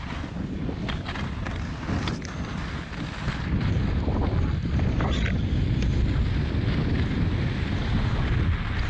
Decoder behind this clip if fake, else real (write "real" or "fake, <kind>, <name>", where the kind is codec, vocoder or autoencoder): real